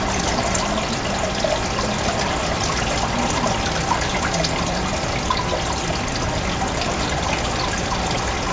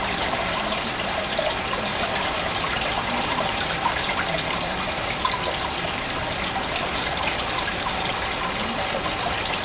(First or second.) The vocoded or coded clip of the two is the second